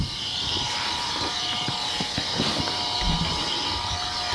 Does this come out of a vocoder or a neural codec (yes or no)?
yes